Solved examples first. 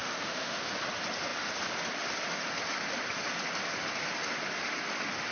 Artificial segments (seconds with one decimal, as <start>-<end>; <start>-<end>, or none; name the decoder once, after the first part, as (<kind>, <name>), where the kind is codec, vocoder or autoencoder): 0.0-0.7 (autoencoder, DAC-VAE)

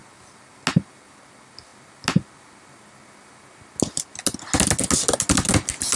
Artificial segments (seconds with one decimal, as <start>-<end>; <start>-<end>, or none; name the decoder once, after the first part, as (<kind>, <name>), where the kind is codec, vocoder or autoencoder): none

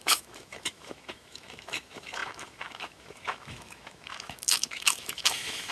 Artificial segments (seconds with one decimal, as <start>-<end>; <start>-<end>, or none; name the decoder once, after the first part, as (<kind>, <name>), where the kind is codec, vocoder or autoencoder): 0.0-5.7 (autoencoder, DAC-VAE)